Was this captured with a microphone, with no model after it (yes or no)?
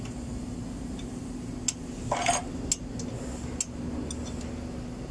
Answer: yes